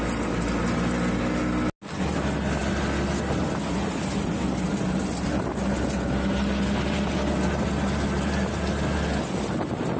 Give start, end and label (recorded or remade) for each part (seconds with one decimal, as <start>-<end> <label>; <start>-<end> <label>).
0.0-10.0 recorded